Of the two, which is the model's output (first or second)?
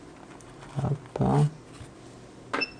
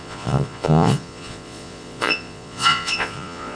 second